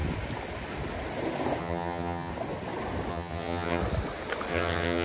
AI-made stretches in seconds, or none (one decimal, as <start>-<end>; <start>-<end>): 1.6-2.3; 3.1-3.8; 4.5-5.0